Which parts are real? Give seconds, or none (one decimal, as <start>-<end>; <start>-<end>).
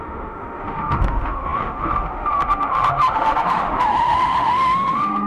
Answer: none